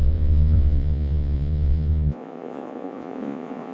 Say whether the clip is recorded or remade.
remade